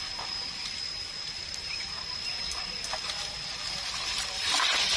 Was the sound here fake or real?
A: real